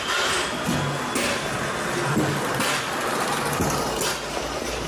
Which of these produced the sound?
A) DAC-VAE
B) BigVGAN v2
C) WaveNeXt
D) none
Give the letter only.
D